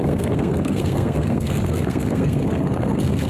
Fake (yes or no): yes